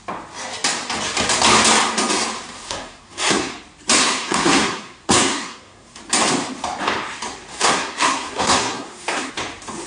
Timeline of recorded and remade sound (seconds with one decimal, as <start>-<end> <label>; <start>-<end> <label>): 0.0-2.6 recorded; 2.6-3.5 remade; 3.5-4.0 recorded; 4.0-6.0 remade; 6.0-7.5 recorded; 7.5-9.3 remade; 9.3-9.9 recorded